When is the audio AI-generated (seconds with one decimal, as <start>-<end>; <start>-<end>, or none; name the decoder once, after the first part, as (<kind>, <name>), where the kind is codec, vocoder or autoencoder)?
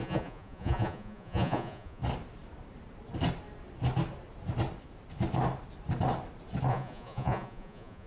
0.0-2.0 (vocoder, Vocos); 6.7-8.1